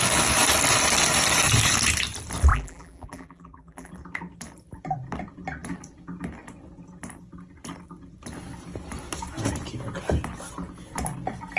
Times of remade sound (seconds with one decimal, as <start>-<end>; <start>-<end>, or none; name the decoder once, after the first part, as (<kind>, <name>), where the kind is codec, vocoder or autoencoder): 2.5-3.9 (vocoder, BigVGAN v2)